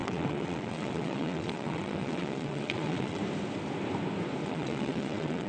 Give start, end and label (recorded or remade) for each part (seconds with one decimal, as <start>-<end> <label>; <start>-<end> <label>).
0.0-3.2 remade; 3.2-4.4 recorded; 4.4-5.5 remade